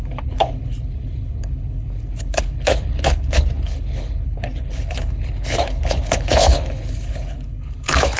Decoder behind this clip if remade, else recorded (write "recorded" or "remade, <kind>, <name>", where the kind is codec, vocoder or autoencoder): remade, codec, HILCodec